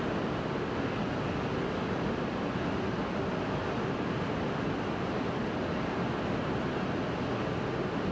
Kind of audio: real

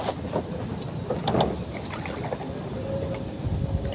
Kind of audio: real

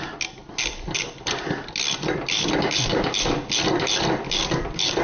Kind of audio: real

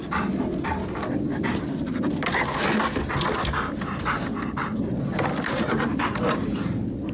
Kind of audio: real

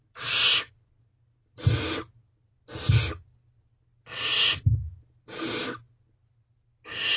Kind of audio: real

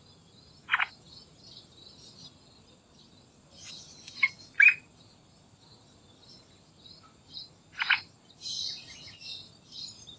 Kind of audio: real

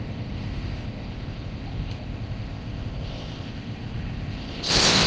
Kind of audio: fake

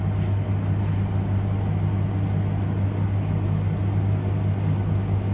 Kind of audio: real